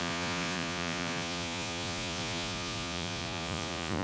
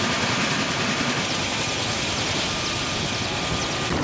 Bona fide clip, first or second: second